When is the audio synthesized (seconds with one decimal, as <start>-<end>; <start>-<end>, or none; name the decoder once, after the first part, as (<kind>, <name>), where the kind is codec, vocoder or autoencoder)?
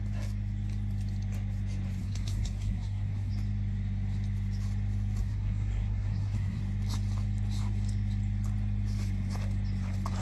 2.0-3.3 (codec, SNAC); 5.2-6.6